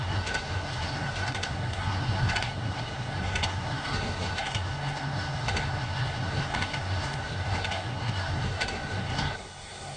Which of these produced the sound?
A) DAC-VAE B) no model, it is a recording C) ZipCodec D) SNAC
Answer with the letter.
D